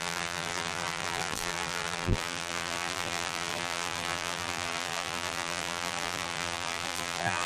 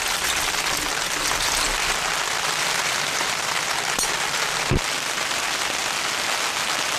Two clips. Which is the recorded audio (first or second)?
second